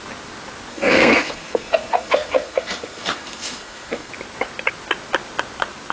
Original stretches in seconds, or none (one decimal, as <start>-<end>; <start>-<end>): 0.0-0.7; 4.1-5.9